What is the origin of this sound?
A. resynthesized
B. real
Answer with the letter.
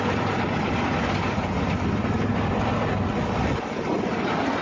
B